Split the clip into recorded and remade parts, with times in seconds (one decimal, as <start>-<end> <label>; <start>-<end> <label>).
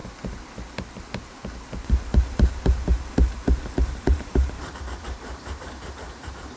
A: 0.0-4.0 recorded; 4.0-6.6 remade